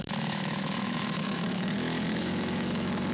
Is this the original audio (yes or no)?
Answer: no